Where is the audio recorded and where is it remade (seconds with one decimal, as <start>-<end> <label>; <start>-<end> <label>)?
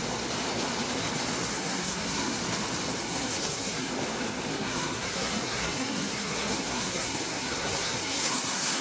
0.0-1.5 recorded; 1.5-2.4 remade; 2.4-3.0 recorded; 3.0-3.9 remade; 3.9-4.5 recorded; 4.5-8.8 remade